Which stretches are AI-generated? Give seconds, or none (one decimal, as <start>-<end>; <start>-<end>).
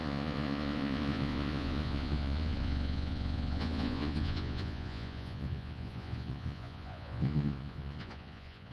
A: 0.0-8.7